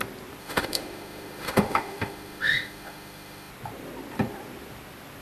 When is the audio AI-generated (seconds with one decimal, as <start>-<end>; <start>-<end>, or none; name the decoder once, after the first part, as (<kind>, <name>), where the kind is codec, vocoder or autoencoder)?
0.4-3.5 (autoencoder, DAC-VAE)